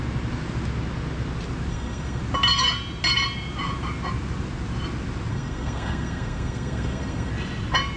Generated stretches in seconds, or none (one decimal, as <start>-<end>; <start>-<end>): 1.7-2.2; 5.3-7.3